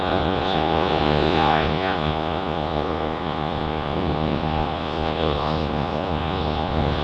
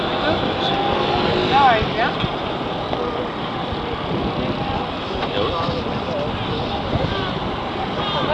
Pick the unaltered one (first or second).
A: second